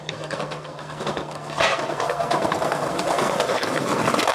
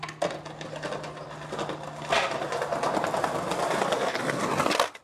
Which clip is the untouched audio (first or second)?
second